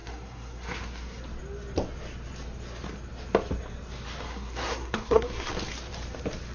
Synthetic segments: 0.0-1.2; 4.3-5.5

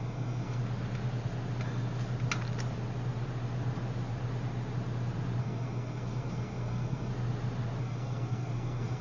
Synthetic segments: 0.0-0.6; 5.4-7.1; 7.8-9.0

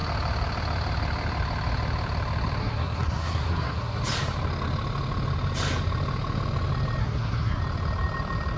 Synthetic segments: 2.6-4.0; 7.0-7.6

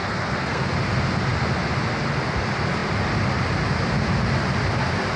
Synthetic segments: 0.0-0.7

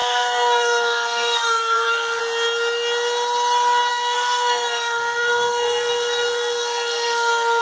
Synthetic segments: 0.0-2.2; 3.9-7.6